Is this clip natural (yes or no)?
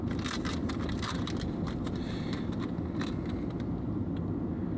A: yes